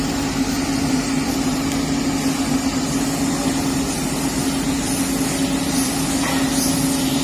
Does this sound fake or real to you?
fake